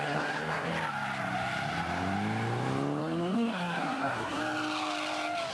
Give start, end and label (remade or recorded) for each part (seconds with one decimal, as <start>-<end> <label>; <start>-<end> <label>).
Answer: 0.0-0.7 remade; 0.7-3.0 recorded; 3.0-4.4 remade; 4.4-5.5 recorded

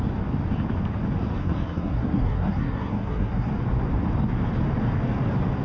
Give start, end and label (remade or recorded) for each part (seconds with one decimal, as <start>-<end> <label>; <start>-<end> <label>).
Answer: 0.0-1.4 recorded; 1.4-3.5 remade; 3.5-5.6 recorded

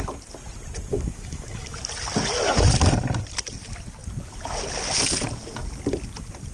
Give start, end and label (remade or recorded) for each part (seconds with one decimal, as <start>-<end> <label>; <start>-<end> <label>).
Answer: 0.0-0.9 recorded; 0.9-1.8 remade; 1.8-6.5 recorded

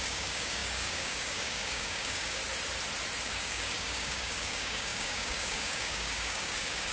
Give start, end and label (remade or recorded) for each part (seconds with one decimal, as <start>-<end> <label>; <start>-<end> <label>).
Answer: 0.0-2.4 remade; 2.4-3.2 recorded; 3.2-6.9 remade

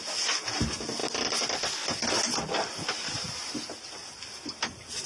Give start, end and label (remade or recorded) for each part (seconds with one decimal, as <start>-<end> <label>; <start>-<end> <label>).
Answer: 0.0-5.1 recorded

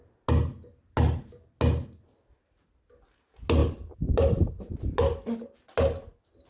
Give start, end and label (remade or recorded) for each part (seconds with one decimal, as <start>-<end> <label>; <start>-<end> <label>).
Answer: 0.0-6.5 recorded

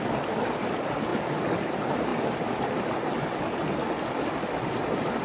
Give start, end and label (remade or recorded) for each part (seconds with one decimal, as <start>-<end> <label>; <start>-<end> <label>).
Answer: 0.0-5.2 recorded